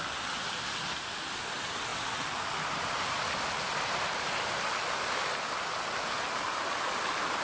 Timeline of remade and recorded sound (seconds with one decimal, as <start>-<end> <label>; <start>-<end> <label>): 0.0-1.9 recorded; 1.9-5.1 remade; 5.1-7.4 recorded